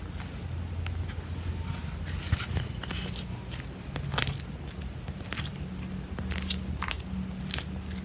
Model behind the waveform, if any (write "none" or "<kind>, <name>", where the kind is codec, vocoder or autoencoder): none